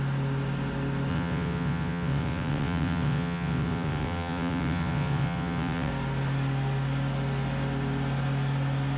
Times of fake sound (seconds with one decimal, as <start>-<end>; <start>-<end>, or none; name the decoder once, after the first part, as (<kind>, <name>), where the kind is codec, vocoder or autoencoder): 1.1-5.9 (vocoder, WaveNeXt)